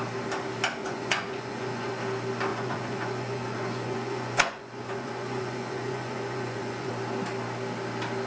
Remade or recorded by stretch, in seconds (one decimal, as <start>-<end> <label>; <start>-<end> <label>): 0.0-0.8 recorded; 0.8-1.9 remade; 1.9-2.5 recorded; 2.5-6.9 remade; 6.9-8.3 recorded